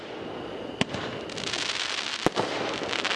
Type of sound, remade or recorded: recorded